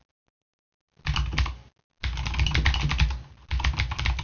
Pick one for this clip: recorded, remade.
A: recorded